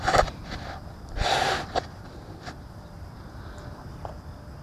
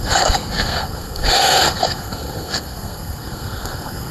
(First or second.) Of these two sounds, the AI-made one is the second